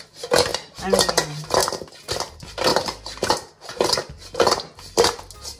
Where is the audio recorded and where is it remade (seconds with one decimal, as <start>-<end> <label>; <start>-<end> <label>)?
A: 0.0-5.6 recorded